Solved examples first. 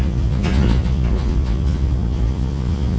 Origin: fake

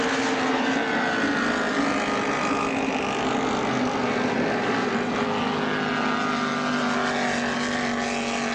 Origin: real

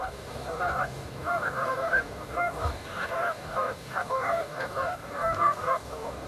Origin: fake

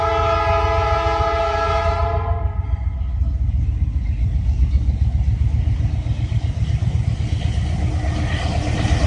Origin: real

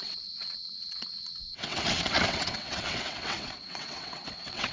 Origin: fake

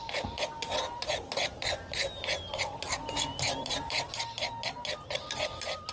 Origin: real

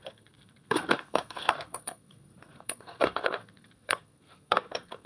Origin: fake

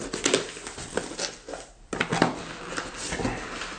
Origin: real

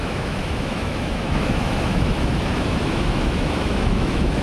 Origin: fake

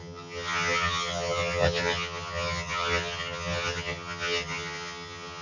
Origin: fake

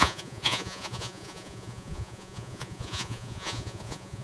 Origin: fake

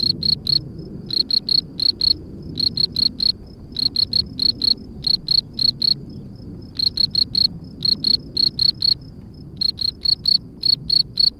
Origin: real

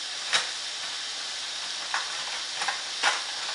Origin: real